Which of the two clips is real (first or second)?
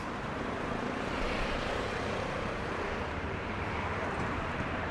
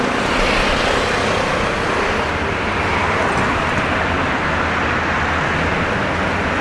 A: second